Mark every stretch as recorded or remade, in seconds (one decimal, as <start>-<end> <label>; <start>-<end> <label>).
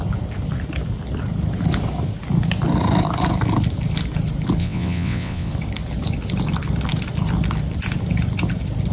0.0-4.6 recorded; 4.6-5.5 remade; 5.5-8.9 recorded